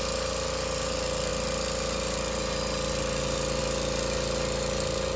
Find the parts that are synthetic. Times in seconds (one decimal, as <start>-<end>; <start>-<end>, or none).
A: none